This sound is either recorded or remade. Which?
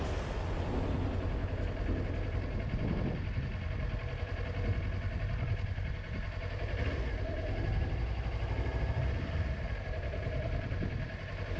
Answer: recorded